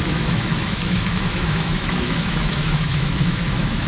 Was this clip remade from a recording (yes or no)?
yes